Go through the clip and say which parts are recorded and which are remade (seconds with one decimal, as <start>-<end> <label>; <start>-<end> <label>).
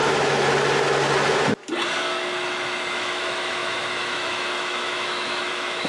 0.0-2.9 recorded; 2.9-5.9 remade